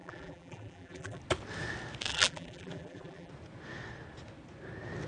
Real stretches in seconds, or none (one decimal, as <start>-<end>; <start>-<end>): 1.2-2.1; 3.3-5.1